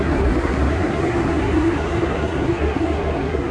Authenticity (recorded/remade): remade